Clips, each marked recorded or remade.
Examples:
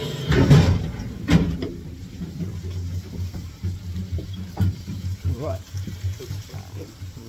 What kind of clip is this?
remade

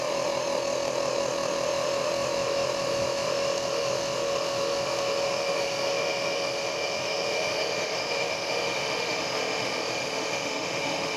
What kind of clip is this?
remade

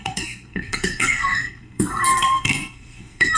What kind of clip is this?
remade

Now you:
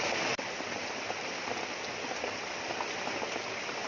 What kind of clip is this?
recorded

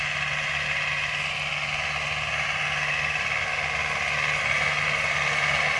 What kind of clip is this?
recorded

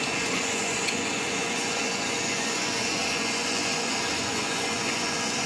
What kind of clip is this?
remade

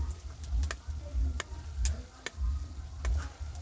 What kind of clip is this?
recorded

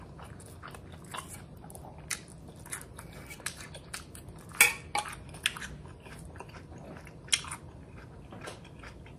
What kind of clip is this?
recorded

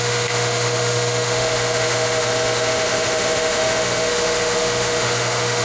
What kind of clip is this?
remade